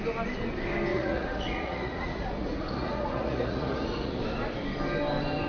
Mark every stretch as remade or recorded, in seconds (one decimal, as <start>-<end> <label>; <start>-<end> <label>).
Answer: 0.0-0.9 recorded; 0.9-4.2 remade; 4.2-5.5 recorded